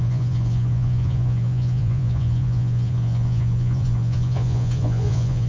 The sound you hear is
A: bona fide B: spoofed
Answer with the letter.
B